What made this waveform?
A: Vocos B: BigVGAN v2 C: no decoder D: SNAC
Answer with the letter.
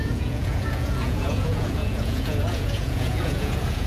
A